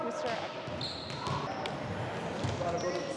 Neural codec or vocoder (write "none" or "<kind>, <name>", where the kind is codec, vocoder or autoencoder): none